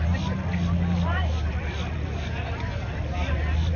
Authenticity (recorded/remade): recorded